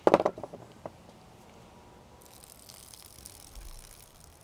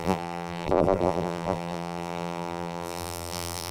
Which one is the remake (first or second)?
second